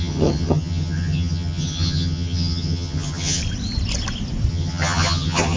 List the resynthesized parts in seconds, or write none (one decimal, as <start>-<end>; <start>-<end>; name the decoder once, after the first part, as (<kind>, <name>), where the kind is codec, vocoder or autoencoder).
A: 0.0-3.4 (vocoder, HiFi-GAN); 4.5-5.6